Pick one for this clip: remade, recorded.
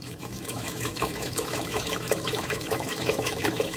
remade